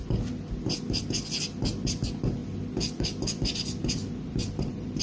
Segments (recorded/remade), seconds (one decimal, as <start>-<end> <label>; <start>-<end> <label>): 0.0-5.0 recorded